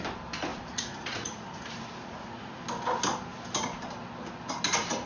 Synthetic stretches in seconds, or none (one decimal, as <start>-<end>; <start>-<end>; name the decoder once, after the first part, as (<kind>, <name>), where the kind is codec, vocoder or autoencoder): 0.5-2.6 (vocoder, Vocos)